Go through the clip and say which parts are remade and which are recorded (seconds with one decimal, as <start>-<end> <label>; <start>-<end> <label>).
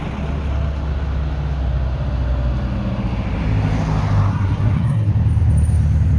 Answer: 0.0-4.3 recorded; 4.3-5.1 remade; 5.1-6.2 recorded